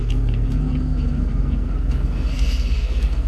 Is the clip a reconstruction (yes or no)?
yes